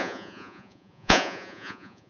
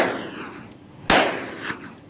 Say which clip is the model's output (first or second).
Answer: first